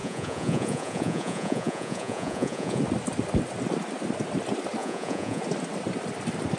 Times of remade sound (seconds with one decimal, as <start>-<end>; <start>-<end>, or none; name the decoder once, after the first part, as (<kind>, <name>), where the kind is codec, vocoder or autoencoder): 0.0-2.8 (vocoder, Vocos); 4.8-5.4

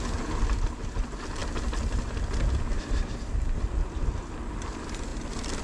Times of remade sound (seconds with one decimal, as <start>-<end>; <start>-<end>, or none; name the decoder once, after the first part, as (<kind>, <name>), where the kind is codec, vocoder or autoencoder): none

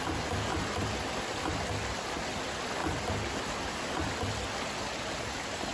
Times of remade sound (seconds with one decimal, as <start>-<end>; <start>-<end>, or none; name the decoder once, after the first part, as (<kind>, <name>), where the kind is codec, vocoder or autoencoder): none

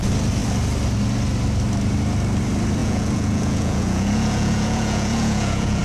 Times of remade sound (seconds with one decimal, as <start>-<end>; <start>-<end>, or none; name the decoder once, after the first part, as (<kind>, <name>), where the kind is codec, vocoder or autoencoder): 2.8-5.8 (vocoder, Vocos)

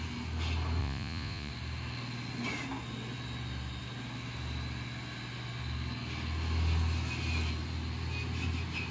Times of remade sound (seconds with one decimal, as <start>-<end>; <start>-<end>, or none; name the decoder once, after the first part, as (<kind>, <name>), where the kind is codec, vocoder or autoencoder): 0.8-1.5 (vocoder, Vocos)

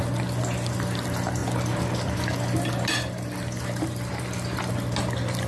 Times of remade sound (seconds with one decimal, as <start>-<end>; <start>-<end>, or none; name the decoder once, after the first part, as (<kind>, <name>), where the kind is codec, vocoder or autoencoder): none

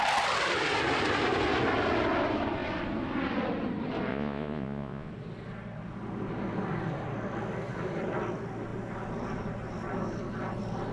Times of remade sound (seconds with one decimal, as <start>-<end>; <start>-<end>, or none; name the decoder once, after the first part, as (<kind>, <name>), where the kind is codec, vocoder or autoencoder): 4.1-5.1 (vocoder, Vocos)

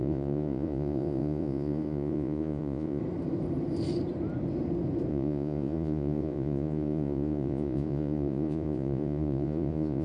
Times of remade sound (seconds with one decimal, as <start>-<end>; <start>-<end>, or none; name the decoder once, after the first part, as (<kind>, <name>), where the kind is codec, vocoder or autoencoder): 0.0-3.0 (vocoder, Vocos); 5.1-10.0